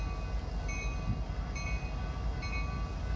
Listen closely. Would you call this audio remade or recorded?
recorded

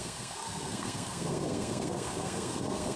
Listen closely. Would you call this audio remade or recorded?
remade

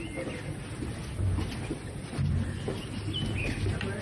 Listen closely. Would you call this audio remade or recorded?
recorded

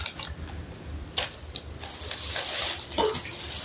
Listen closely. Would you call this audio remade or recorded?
recorded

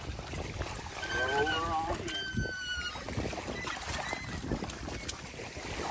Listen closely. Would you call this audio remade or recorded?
recorded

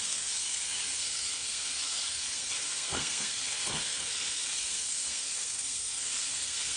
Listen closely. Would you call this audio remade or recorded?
remade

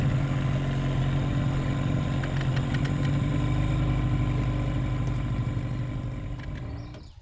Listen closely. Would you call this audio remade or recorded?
recorded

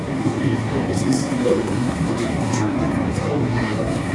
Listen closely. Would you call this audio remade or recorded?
remade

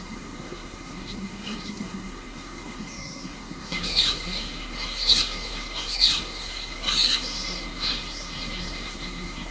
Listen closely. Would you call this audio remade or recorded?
remade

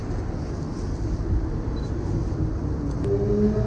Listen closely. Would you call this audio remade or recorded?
recorded